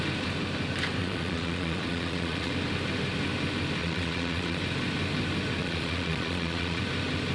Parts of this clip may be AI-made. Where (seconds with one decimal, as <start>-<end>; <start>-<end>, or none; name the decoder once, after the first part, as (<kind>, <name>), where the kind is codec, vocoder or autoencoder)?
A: 1.0-2.5 (vocoder, Vocos); 3.8-4.6; 5.6-6.8